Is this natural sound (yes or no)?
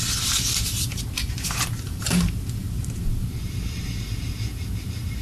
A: no